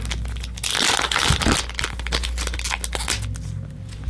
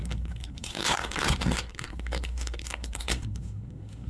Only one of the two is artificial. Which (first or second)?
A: second